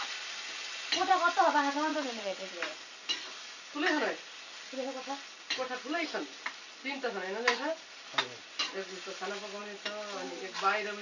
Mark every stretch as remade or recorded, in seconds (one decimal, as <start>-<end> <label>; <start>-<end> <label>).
0.0-1.9 recorded; 1.9-2.5 remade; 2.5-11.0 recorded